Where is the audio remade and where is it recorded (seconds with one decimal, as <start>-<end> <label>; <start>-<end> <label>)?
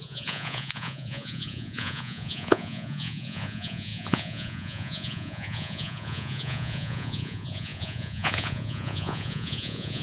0.0-10.0 remade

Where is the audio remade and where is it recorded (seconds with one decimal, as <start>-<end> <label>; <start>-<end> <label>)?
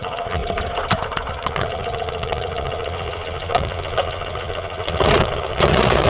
0.0-0.4 remade; 0.4-1.3 recorded; 1.3-6.1 remade